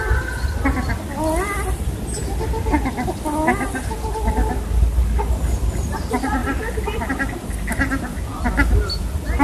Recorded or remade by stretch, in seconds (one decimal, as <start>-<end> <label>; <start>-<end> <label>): 0.0-9.4 recorded